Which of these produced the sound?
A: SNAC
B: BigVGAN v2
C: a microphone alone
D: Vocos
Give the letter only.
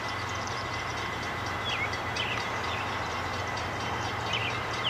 B